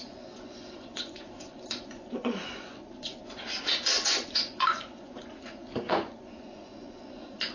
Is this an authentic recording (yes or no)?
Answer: no